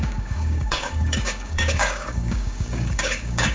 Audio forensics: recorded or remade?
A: remade